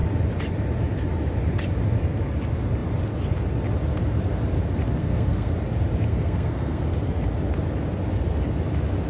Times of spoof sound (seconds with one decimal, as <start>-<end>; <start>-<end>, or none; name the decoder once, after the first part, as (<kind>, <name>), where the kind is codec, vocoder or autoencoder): 5.0-5.5 (codec, SNAC); 6.1-6.8

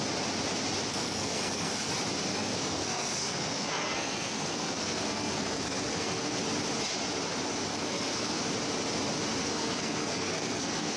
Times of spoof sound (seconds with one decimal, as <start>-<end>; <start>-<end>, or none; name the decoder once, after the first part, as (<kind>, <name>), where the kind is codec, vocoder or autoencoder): 0.9-1.9 (codec, SNAC); 2.3-6.4; 7.7-8.4; 9.4-11.0

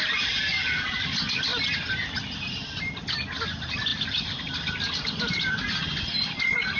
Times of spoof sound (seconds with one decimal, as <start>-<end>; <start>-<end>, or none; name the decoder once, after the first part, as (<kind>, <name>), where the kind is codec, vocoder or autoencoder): none

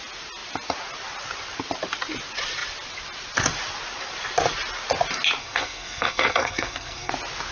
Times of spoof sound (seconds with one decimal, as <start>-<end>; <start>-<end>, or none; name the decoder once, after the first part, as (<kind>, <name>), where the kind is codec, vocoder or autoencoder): 5.4-7.1 (codec, SNAC)

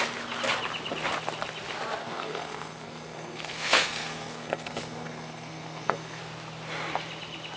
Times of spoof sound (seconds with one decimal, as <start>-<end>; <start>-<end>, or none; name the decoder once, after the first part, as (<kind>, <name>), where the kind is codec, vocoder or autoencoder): 2.0-6.2 (codec, SNAC)

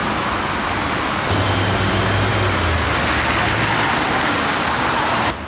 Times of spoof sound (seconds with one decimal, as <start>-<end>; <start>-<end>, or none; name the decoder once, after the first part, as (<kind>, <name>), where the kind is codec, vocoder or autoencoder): none

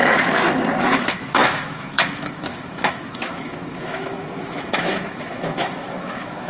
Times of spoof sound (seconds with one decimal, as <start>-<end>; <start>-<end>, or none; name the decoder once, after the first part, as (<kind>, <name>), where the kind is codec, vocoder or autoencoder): 0.8-6.5 (autoencoder, DAC-VAE)

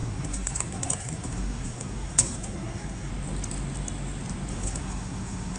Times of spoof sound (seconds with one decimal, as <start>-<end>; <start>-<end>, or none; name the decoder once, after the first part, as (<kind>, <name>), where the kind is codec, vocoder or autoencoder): 0.0-3.1 (codec, SNAC); 4.5-5.6